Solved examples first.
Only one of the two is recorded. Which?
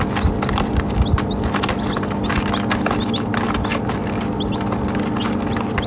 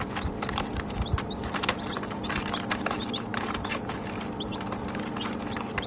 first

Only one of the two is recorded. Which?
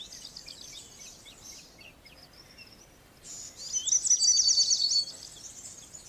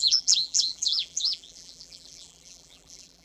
first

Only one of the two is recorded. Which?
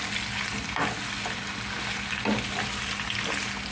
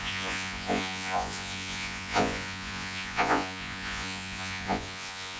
first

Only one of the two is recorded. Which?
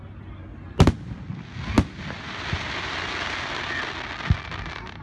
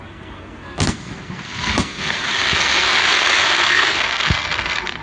first